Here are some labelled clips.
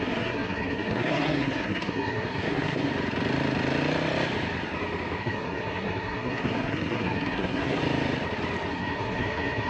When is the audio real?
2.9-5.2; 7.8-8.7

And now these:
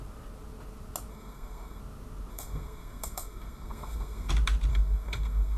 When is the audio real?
0.0-1.1; 1.8-2.3; 4.3-4.7

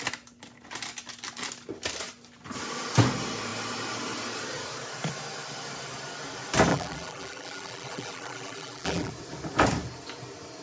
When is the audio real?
0.0-6.7; 9.1-10.6